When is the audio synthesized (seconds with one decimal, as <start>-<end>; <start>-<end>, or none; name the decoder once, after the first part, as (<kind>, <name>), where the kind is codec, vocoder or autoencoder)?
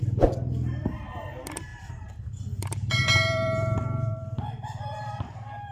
1.7-5.1 (vocoder, BigVGAN v2)